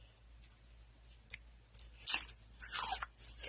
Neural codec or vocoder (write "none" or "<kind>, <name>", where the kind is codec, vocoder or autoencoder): none